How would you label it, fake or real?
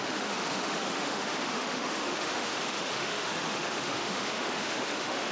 fake